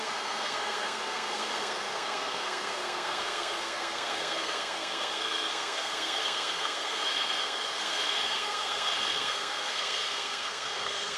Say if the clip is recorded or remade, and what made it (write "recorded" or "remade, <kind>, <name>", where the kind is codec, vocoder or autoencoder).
remade, codec, SNAC